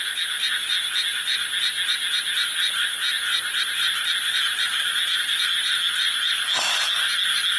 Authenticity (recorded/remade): recorded